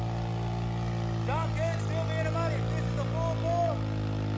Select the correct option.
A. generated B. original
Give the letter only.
B